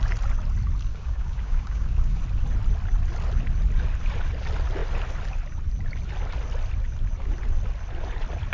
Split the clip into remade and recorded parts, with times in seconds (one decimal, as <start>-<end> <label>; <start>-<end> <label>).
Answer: 0.0-0.9 recorded; 0.9-2.2 remade; 2.2-8.5 recorded